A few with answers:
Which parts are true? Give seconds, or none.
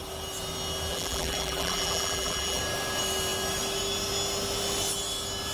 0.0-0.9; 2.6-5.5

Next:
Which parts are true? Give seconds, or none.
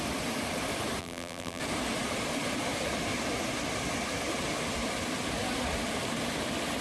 0.0-1.0; 1.6-6.8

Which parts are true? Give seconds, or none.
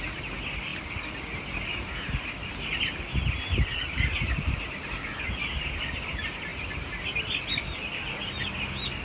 0.0-0.7; 1.2-3.7; 5.2-9.0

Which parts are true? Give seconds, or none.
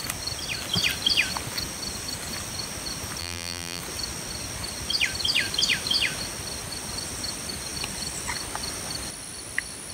0.0-3.2; 3.8-9.9